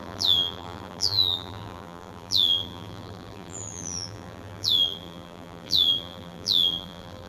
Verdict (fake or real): fake